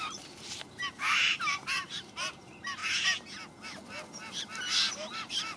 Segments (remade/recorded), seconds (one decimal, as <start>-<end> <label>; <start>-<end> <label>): 0.0-2.8 remade; 2.8-4.9 recorded; 4.9-5.6 remade